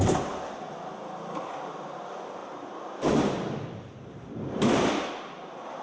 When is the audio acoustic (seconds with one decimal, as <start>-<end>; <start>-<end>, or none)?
0.0-2.4; 5.1-5.8